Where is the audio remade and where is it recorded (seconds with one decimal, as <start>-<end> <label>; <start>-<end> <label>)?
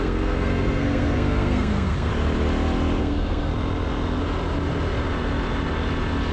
0.0-2.1 remade; 2.1-3.0 recorded; 3.0-3.5 remade; 3.5-6.3 recorded